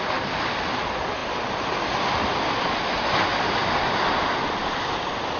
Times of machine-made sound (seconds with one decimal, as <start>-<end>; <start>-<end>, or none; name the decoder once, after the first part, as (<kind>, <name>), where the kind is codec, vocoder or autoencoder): none

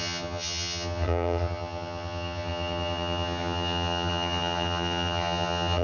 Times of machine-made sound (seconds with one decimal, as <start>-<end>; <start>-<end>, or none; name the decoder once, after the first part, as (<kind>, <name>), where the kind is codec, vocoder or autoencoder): 0.0-5.8 (vocoder, HiFi-GAN)

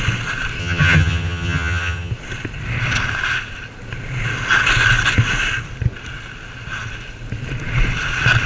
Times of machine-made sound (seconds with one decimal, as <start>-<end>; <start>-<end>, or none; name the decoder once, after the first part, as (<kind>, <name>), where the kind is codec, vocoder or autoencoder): 0.6-2.1 (vocoder, HiFi-GAN)

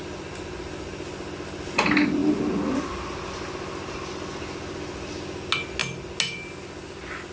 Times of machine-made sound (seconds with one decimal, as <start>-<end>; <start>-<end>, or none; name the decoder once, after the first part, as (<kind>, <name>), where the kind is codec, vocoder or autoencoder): none

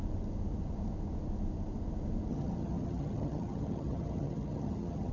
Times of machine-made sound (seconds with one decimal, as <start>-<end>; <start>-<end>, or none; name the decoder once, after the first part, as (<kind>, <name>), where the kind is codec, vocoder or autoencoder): 2.3-5.1 (vocoder, HiFi-GAN)

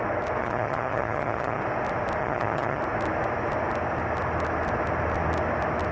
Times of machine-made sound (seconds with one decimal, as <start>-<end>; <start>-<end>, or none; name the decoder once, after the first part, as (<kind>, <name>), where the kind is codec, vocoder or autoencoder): 0.4-1.6 (vocoder, HiFi-GAN); 2.2-2.8

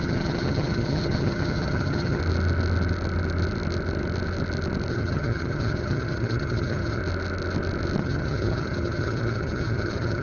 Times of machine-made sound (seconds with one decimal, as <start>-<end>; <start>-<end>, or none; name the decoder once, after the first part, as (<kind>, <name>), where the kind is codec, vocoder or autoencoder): 0.0-2.2 (vocoder, HiFi-GAN); 4.9-7.0; 8.0-10.2